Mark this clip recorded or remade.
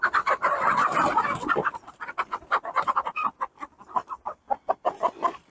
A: recorded